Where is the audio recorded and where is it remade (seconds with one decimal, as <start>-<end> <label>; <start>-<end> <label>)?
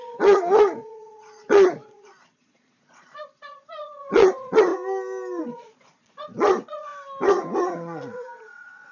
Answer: 0.0-4.7 remade; 4.7-5.4 recorded; 5.4-6.9 remade; 6.9-7.6 recorded; 7.6-8.9 remade